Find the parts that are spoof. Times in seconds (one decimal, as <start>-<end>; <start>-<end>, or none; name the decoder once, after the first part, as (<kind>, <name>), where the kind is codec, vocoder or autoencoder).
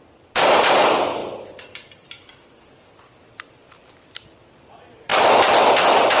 none